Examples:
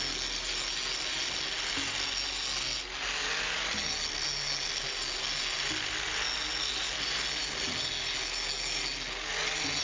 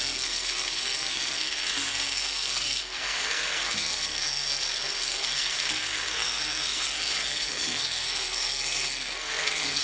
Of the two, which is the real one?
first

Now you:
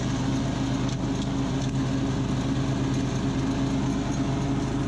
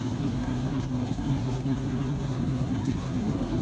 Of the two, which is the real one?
first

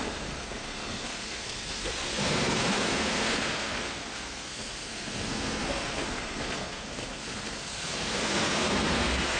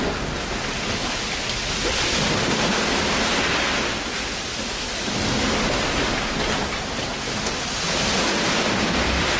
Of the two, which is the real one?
second